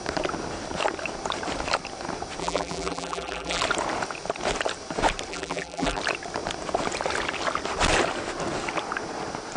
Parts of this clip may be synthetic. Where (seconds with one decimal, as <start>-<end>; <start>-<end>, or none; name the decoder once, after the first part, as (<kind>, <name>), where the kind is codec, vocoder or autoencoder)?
2.4-3.6 (vocoder, BigVGAN v2); 5.3-6.0